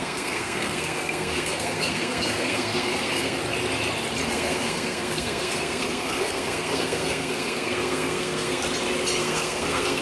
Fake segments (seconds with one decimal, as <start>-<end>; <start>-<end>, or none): 0.0-3.4; 4.3-8.6; 9.2-10.0